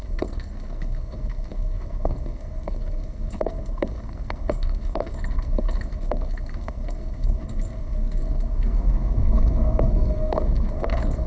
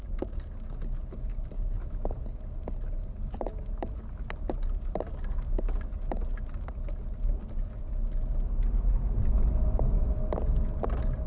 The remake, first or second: first